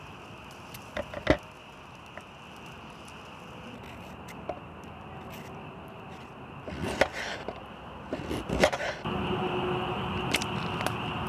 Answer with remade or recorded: recorded